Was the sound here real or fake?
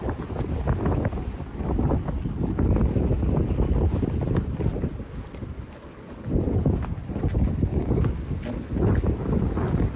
real